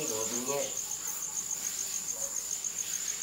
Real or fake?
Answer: real